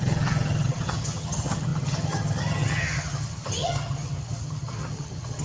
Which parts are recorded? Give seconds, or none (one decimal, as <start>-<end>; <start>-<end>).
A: none